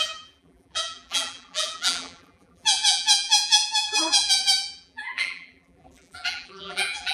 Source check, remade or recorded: remade